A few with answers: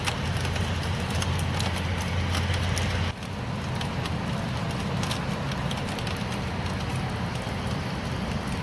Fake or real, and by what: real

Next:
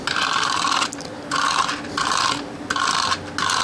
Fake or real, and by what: real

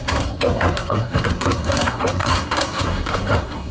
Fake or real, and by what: fake, codec, SNAC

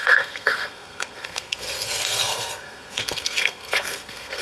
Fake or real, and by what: fake, codec, SNAC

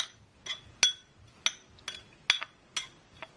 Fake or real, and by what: real